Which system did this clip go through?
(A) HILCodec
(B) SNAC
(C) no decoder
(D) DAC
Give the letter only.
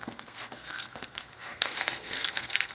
B